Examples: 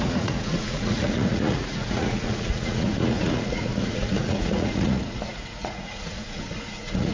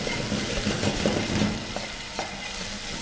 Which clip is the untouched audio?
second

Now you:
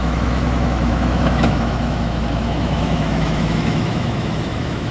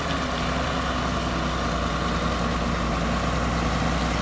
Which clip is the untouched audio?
second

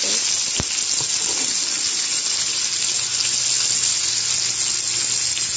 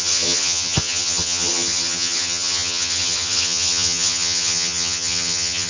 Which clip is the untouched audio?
first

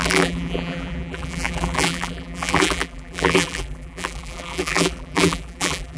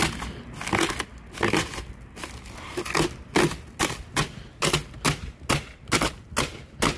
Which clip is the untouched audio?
second